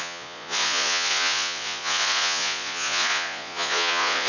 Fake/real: fake